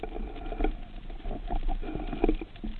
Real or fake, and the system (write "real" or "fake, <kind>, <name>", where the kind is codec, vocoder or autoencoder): real